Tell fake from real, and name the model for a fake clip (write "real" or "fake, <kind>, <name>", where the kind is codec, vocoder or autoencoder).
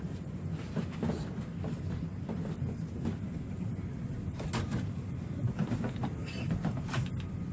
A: real